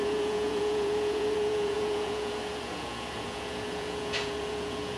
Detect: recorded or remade remade